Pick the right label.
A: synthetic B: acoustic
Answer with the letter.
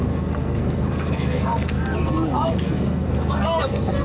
A